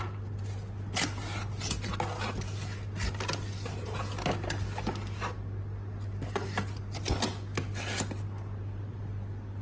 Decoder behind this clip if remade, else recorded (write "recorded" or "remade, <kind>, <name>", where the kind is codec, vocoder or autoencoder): recorded